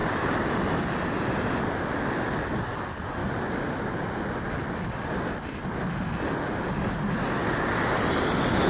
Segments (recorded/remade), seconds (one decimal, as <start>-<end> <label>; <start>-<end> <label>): 0.0-8.7 recorded